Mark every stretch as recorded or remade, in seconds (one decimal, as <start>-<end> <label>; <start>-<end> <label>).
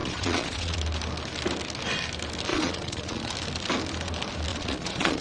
0.0-0.8 remade; 0.8-2.5 recorded; 2.5-3.3 remade; 3.3-4.5 recorded; 4.5-5.2 remade